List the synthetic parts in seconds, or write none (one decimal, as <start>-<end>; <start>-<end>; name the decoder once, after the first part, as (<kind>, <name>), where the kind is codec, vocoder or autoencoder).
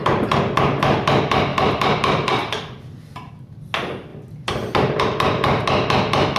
none